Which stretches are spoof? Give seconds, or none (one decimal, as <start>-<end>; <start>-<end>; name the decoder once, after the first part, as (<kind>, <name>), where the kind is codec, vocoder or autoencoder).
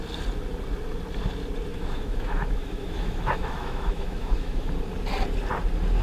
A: 1.7-4.7 (autoencoder, DAC-VAE)